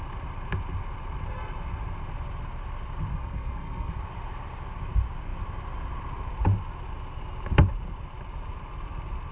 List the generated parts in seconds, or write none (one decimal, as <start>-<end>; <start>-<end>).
3.1-3.9